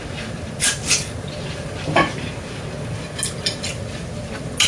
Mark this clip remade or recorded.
recorded